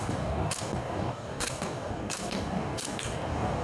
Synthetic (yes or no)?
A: yes